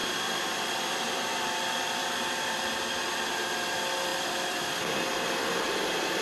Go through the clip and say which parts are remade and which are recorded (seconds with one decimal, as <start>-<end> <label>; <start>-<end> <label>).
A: 0.0-2.6 remade; 2.6-4.1 recorded; 4.1-5.4 remade; 5.4-6.2 recorded